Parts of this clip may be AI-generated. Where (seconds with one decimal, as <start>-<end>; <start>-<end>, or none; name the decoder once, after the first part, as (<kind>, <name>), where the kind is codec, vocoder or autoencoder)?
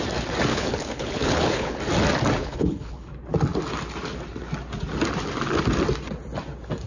0.5-1.8 (codec, HILCodec); 2.4-3.1